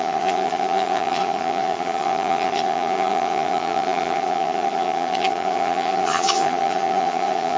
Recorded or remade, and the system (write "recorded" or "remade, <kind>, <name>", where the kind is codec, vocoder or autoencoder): remade, vocoder, HiFi-GAN